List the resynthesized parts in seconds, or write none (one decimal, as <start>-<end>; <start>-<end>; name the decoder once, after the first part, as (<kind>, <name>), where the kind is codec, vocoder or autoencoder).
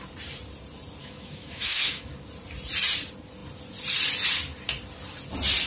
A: 1.0-2.1 (autoencoder, DAC-VAE)